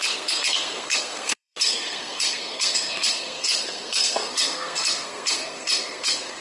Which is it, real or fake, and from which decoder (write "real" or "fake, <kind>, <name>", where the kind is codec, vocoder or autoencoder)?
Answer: fake, codec, SNAC